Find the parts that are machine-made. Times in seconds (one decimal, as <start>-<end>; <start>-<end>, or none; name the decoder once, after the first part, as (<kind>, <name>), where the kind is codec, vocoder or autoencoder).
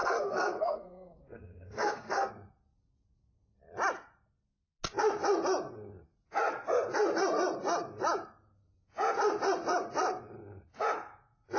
0.0-2.3 (codec, SNAC)